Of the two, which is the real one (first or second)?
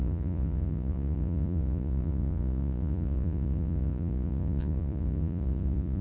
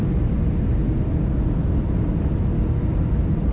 second